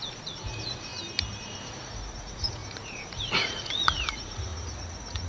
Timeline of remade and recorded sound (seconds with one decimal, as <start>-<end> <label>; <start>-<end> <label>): 0.0-0.9 remade; 0.9-1.4 recorded; 1.4-5.3 remade